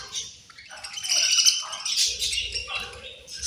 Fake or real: real